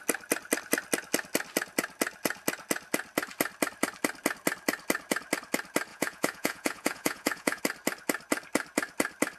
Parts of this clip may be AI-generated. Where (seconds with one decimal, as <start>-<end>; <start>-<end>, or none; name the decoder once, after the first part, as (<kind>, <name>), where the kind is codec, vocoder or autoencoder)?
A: 5.9-7.6 (vocoder, Vocos)